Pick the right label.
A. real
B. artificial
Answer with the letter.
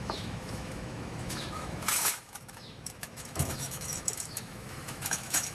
B